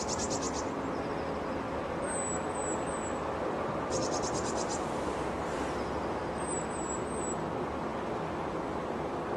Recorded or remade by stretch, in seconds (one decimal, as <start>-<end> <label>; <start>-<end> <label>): 0.0-3.0 recorded; 3.0-6.4 remade; 6.4-9.4 recorded